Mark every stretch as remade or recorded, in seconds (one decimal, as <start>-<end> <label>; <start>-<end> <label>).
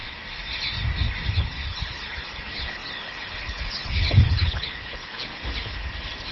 0.0-1.3 recorded; 1.3-5.3 remade; 5.3-6.3 recorded